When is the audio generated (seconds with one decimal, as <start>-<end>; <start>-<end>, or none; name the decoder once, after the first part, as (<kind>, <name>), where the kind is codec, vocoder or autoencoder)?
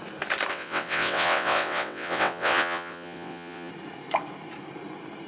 0.5-3.7 (vocoder, WaveNeXt)